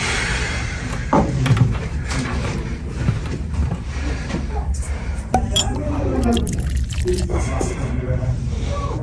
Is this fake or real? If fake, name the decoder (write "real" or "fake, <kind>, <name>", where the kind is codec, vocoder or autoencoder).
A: fake, vocoder, BigVGAN v2